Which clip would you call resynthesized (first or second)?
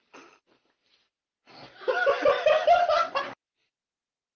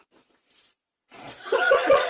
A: second